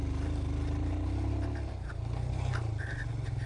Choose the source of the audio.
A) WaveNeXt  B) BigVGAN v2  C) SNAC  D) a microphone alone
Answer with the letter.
D